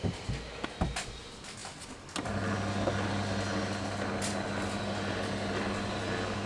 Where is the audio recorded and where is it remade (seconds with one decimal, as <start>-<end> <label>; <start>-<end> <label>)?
0.0-6.5 recorded

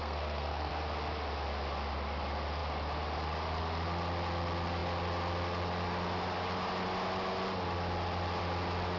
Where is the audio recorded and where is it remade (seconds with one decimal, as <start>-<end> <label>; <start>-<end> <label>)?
0.0-0.7 remade; 0.7-9.0 recorded

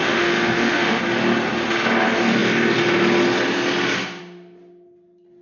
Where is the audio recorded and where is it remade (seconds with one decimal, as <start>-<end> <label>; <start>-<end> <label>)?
0.0-1.0 remade; 1.0-5.4 recorded

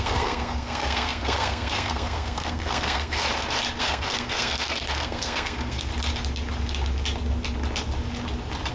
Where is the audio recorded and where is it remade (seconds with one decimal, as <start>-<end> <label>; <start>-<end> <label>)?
0.0-3.2 remade; 3.2-3.8 recorded; 3.8-5.9 remade; 5.9-8.7 recorded

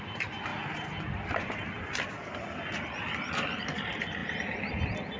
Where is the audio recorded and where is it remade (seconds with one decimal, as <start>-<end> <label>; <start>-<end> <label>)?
0.0-5.2 recorded